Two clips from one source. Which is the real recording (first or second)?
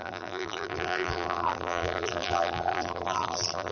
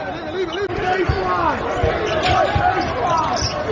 second